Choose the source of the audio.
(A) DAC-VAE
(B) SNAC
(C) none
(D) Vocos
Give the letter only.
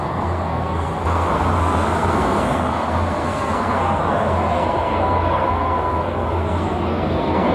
B